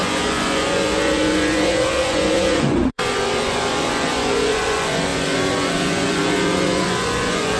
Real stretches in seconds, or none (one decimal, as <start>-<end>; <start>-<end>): none